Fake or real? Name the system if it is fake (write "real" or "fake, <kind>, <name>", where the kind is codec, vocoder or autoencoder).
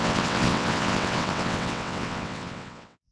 fake, vocoder, WaveNeXt